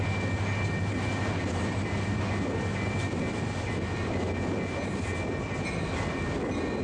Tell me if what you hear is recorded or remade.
recorded